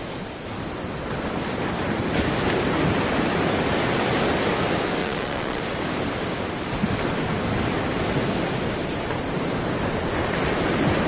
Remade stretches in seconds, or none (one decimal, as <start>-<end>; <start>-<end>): 5.0-5.6